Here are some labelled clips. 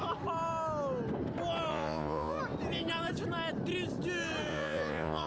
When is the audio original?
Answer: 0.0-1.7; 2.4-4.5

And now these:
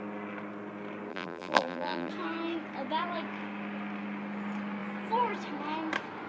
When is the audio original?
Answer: 0.0-1.1; 2.1-6.3

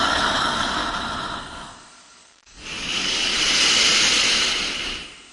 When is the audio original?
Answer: 0.8-1.4; 3.3-5.3